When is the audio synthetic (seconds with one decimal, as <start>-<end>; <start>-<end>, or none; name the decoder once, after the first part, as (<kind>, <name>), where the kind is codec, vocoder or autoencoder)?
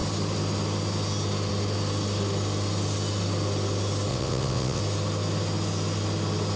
4.1-4.8 (vocoder, WaveNeXt)